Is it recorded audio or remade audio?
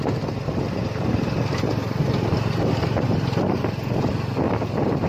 recorded